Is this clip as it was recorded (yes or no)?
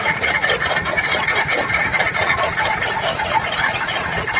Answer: no